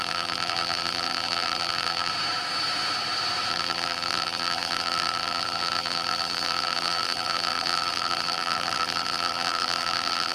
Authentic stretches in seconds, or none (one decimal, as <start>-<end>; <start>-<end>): 2.1-3.5